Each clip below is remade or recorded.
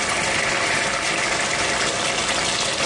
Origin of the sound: remade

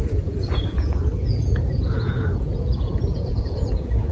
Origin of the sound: remade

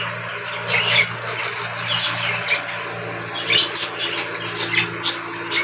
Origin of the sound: recorded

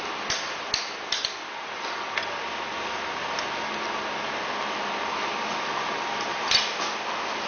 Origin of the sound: recorded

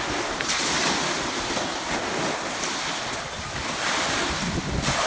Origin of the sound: recorded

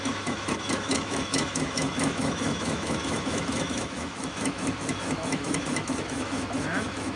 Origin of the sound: remade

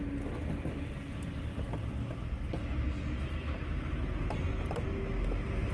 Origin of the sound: recorded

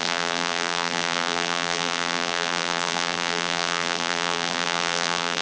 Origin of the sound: remade